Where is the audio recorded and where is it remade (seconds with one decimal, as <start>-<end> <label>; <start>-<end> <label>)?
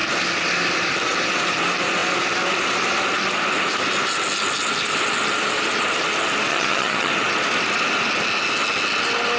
0.0-6.5 recorded; 6.5-7.1 remade; 7.1-9.4 recorded